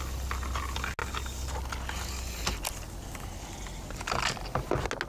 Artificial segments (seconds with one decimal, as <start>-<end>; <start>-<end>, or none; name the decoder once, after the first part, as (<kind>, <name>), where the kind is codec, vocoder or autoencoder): none

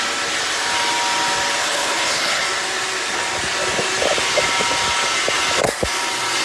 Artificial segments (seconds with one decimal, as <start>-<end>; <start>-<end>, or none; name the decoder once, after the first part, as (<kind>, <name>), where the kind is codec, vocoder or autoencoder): 1.6-2.4 (codec, HILCodec)

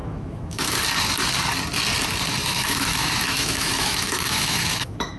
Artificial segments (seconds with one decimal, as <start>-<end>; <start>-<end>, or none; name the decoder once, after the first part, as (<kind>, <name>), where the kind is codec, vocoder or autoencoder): 0.0-0.8 (autoencoder, DAC-VAE); 2.4-5.2

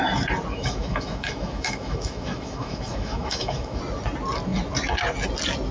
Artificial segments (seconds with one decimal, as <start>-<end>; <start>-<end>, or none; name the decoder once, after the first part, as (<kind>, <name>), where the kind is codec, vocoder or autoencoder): 0.5-3.8 (autoencoder, DAC-VAE)

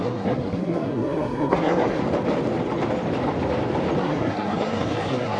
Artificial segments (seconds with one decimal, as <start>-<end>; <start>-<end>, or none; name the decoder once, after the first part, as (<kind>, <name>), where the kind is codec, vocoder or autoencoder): 0.0-2.0 (codec, SNAC); 4.0-5.4

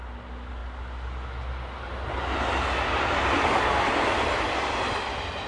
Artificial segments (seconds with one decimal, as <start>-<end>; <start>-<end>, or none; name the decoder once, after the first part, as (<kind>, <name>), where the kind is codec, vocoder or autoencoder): none

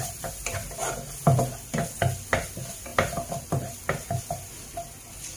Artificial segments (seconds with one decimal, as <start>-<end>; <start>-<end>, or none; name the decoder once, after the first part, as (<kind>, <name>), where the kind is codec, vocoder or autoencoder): none